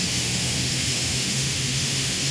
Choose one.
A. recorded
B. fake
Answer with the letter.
B